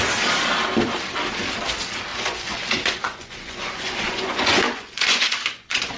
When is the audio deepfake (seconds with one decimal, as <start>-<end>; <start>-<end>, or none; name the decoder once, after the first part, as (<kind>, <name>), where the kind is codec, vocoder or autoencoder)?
2.1-6.0 (vocoder, Vocos)